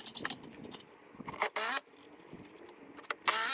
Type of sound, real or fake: real